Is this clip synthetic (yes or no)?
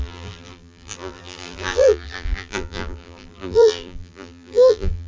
yes